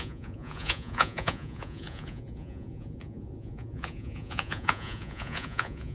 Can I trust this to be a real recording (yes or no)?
no